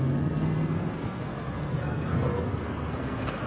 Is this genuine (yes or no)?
no